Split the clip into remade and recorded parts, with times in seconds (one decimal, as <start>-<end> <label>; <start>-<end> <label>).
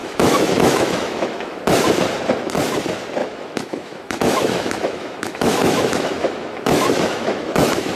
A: 0.0-1.6 remade; 1.6-3.2 recorded; 3.2-8.0 remade